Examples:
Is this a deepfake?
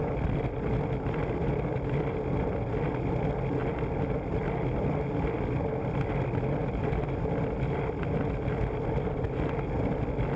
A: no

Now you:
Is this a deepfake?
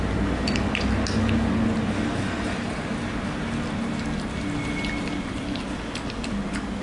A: no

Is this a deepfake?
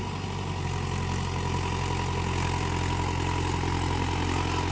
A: no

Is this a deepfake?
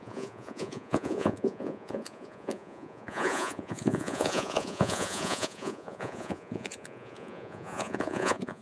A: yes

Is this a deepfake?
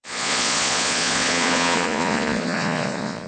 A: yes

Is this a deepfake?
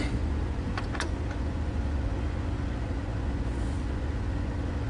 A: yes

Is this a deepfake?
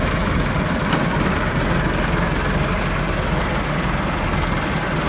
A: no